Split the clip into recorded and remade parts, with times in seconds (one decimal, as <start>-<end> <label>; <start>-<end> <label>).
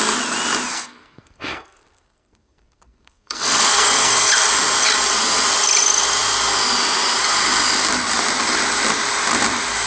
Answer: 0.0-0.7 recorded; 0.7-4.3 remade; 4.3-9.9 recorded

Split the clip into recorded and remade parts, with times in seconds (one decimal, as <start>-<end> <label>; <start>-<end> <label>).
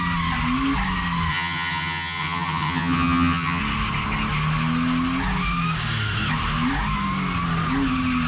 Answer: 0.0-1.3 recorded; 1.3-3.6 remade; 3.6-8.3 recorded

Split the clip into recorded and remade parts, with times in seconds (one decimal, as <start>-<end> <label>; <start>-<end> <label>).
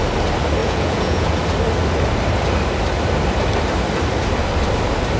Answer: 0.0-0.6 recorded; 0.6-1.4 remade; 1.4-5.2 recorded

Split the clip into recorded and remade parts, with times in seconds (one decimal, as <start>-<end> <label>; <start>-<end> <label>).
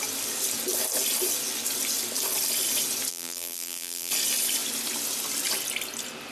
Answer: 0.0-3.1 recorded; 3.1-4.1 remade; 4.1-6.3 recorded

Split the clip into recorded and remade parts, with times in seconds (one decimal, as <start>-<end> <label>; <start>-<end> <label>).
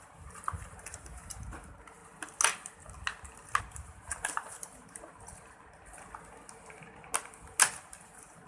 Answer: 0.0-2.0 remade; 2.0-3.6 recorded; 3.6-5.1 remade; 5.1-8.0 recorded; 8.0-8.5 remade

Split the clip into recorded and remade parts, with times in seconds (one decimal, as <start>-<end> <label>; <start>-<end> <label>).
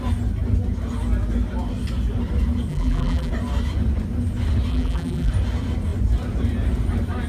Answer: 0.0-2.7 recorded; 2.7-3.3 remade; 3.3-4.7 recorded; 4.7-5.3 remade; 5.3-7.3 recorded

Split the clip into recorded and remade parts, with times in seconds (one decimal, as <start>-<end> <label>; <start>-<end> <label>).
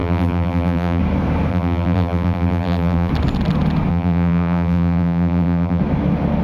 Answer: 0.0-1.0 remade; 1.0-1.5 recorded; 1.5-3.1 remade; 3.1-3.9 recorded; 3.9-5.8 remade; 5.8-6.4 recorded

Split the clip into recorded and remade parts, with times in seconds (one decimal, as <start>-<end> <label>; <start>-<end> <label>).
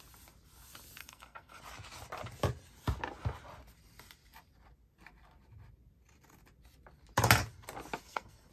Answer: 0.0-1.0 recorded; 1.0-1.6 remade; 1.6-8.0 recorded; 8.0-8.5 remade